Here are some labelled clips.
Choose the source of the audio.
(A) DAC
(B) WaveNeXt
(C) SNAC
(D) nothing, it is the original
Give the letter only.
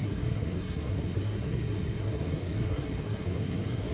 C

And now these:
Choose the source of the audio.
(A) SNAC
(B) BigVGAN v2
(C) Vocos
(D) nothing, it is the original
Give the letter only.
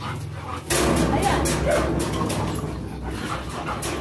D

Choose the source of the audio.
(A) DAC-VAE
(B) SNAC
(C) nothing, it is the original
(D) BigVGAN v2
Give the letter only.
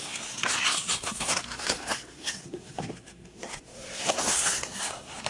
B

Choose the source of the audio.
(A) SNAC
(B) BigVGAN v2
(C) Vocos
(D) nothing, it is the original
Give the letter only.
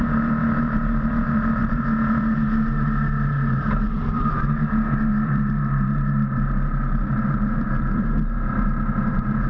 B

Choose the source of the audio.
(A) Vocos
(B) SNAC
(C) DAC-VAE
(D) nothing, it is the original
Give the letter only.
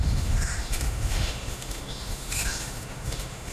C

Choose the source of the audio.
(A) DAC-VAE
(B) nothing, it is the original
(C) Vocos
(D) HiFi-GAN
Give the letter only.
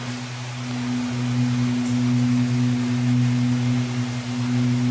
B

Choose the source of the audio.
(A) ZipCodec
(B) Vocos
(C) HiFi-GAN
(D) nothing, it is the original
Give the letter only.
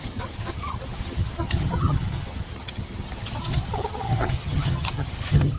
C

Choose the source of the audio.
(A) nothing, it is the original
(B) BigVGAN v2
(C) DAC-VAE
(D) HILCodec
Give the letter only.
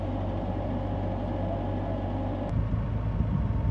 A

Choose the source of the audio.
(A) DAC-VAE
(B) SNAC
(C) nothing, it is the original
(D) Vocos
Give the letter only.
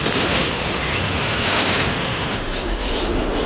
A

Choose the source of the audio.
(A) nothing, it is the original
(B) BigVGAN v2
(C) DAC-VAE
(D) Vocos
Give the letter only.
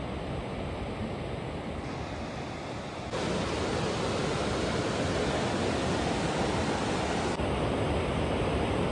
A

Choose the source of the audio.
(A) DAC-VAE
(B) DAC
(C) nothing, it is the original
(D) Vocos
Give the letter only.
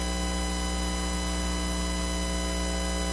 C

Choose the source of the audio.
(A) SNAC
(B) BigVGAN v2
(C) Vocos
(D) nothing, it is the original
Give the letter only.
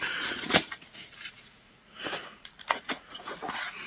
C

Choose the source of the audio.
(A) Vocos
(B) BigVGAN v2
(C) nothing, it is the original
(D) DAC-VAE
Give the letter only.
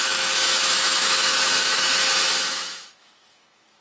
D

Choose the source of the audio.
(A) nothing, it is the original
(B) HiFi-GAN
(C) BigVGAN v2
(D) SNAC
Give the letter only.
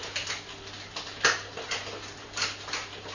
A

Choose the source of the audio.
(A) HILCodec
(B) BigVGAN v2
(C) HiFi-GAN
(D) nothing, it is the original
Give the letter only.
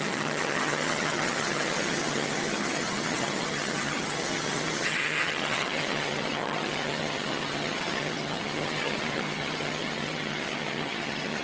C